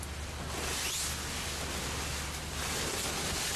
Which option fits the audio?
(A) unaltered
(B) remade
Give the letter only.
A